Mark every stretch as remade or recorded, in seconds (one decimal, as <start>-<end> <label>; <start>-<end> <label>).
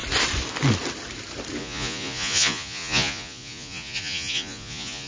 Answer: 0.0-1.6 recorded; 1.6-5.1 remade